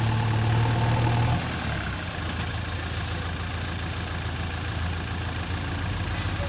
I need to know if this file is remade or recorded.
recorded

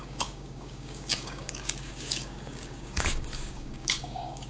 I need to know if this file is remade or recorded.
remade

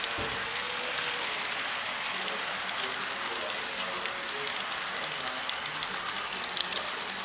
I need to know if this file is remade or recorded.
recorded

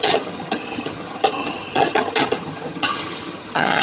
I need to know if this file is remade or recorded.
remade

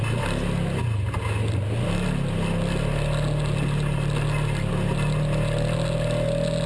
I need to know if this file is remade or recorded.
recorded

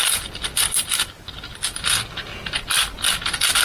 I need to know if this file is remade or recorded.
recorded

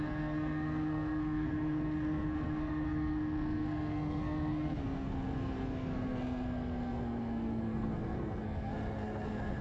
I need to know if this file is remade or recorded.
remade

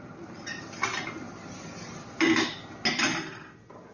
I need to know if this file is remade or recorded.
recorded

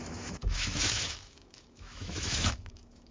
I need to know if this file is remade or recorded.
remade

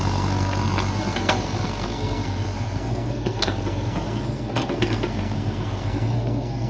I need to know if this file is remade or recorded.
remade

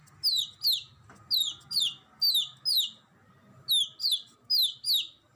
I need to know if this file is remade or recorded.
recorded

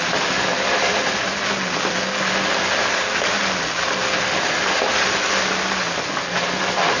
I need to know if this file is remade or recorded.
recorded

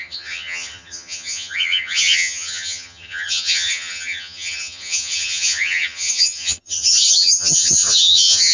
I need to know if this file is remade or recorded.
remade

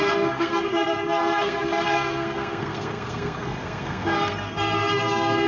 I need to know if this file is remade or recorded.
remade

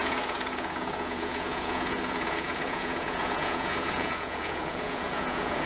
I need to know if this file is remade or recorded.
remade